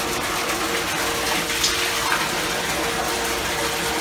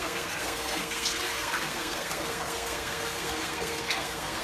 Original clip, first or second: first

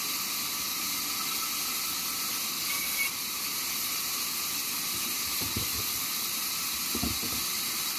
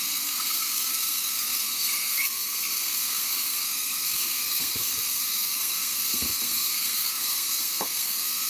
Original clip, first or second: first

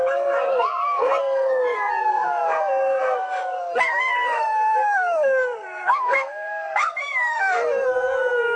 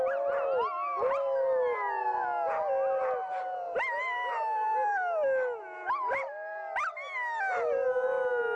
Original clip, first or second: second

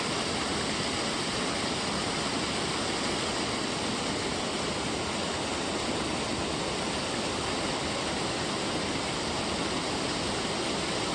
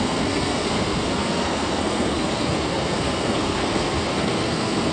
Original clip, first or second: first